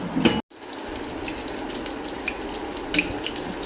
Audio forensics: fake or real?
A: real